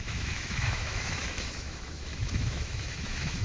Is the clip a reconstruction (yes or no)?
yes